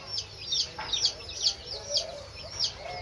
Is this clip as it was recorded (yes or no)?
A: yes